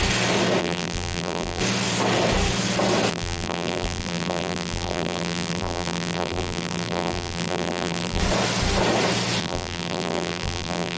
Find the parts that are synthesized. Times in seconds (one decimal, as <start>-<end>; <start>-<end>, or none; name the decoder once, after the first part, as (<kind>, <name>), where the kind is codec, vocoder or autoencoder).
0.6-1.6 (vocoder, BigVGAN v2); 3.1-8.2; 9.4-11.0